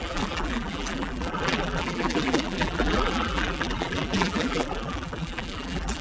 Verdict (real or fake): fake